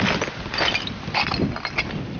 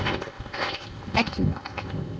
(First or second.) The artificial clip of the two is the second